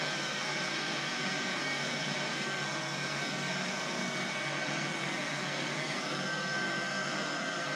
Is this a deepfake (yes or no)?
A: yes